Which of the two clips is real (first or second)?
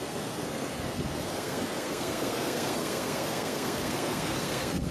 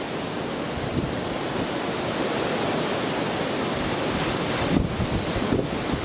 second